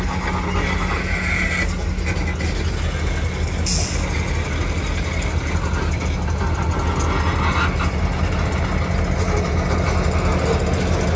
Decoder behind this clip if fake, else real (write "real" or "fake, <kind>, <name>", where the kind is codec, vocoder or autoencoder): real